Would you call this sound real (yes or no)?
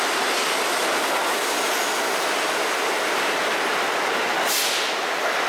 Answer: yes